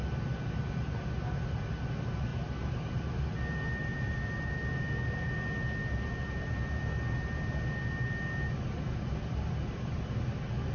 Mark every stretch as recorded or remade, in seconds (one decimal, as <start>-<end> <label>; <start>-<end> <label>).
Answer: 0.0-2.3 recorded; 2.3-3.2 remade; 3.2-3.8 recorded; 3.8-5.3 remade; 5.3-10.7 recorded